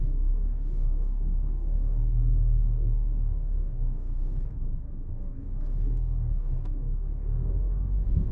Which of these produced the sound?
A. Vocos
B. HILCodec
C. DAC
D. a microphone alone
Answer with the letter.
C